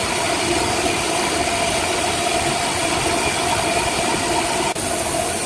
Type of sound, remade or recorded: recorded